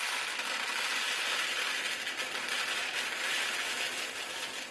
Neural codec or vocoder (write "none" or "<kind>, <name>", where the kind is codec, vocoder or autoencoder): none